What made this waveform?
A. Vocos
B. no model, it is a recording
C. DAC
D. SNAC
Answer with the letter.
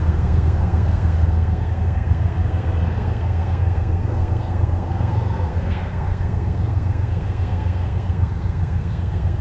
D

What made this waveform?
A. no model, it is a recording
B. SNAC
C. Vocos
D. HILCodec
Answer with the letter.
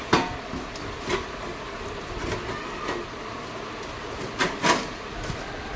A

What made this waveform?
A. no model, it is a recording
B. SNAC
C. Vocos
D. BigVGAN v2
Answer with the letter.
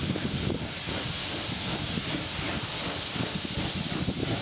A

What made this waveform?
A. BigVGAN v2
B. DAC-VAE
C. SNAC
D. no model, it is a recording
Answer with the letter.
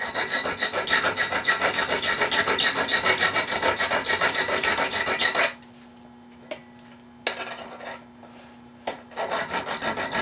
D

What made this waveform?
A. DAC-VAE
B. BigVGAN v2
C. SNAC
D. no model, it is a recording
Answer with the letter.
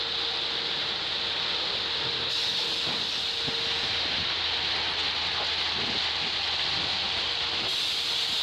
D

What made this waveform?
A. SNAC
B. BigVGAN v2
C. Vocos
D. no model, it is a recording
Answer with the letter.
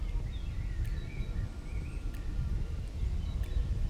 D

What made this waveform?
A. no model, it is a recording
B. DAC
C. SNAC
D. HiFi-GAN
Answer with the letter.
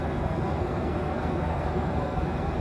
C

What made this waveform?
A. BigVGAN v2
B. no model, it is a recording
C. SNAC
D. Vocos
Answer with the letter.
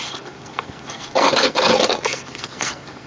C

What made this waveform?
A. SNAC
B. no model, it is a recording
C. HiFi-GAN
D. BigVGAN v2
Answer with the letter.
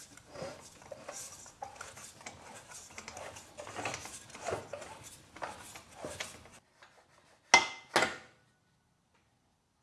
B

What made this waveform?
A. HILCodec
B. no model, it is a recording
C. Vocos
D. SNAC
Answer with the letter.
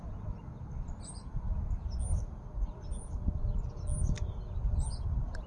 B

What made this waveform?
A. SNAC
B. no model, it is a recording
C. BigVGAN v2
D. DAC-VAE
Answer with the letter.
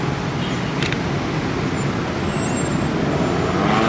B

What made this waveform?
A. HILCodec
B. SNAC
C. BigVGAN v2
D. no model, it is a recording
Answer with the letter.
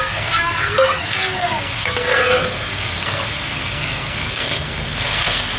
B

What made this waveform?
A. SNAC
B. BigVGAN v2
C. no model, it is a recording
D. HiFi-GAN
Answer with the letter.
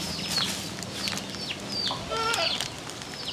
C